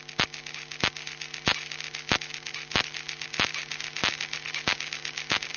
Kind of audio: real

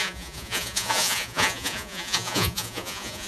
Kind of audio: fake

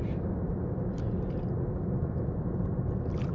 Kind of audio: real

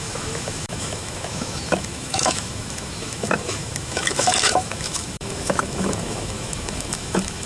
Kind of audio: fake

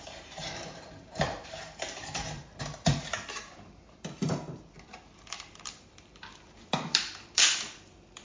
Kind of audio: fake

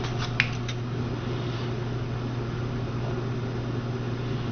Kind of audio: real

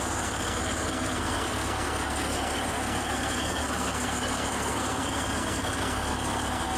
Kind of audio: fake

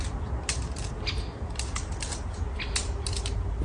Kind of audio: real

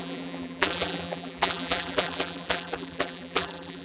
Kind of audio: fake